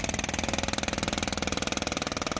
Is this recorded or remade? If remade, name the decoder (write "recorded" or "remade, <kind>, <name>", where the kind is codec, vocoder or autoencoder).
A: recorded